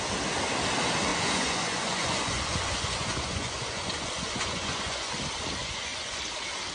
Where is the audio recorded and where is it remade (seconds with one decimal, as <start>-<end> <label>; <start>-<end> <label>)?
0.0-1.1 recorded; 1.1-5.1 remade; 5.1-5.6 recorded; 5.6-6.2 remade; 6.2-6.7 recorded

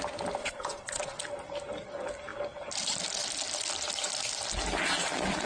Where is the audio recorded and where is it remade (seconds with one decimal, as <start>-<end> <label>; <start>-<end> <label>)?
0.0-0.4 recorded; 0.4-1.2 remade; 1.2-5.5 recorded